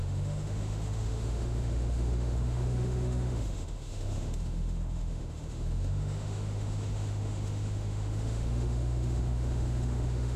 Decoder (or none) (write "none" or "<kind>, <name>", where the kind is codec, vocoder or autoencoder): autoencoder, DAC-VAE